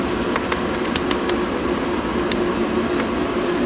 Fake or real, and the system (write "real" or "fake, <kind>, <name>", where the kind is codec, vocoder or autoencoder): real